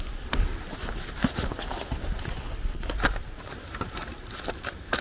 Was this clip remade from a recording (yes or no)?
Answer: no